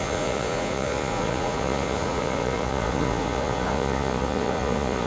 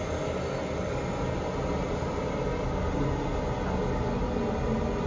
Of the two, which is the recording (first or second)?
second